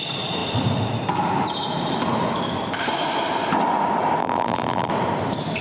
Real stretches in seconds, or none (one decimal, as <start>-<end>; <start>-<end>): 0.0-4.2; 4.9-5.6

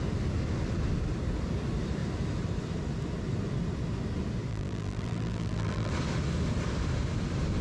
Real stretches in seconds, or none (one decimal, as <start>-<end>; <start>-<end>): 0.0-4.5; 5.9-7.6

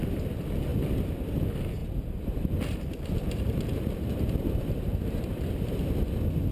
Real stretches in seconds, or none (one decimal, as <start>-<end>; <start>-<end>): 0.0-1.8; 5.2-6.5

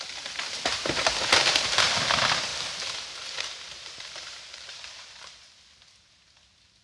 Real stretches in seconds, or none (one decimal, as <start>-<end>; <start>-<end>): 0.0-2.5; 5.5-6.8